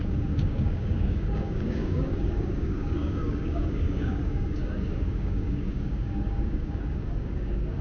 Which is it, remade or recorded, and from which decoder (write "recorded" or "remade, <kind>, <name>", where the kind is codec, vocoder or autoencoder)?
remade, codec, DAC